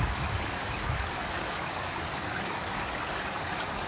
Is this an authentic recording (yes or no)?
no